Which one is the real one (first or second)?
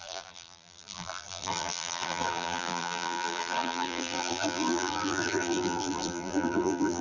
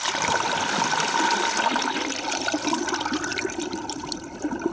second